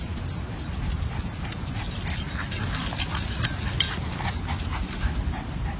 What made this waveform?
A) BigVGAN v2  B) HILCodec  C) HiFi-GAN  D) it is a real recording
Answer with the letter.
D